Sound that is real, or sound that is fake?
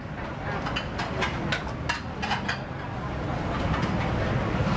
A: real